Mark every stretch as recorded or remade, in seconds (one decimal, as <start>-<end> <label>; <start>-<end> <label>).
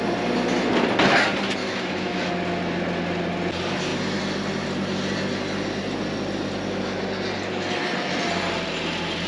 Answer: 0.0-1.6 recorded; 1.6-2.3 remade; 2.3-9.3 recorded